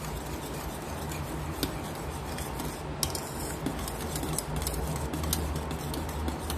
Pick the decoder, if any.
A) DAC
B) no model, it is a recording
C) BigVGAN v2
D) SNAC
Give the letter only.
B